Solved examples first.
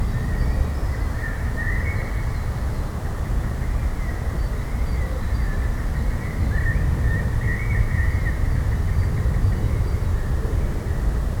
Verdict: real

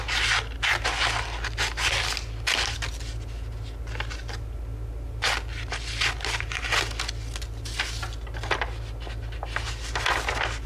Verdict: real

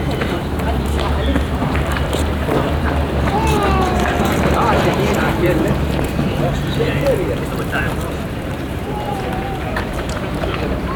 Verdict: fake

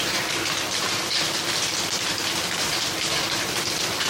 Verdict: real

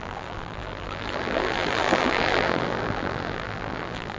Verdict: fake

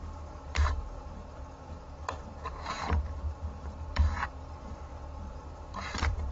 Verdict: fake